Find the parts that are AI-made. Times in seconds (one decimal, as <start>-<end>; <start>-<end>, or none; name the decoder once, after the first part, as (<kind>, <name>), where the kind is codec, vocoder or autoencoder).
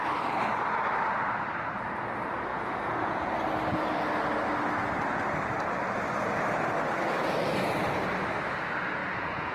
2.5-3.3 (vocoder, Vocos); 9.0-9.5